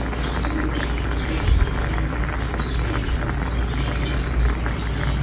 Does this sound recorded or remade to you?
recorded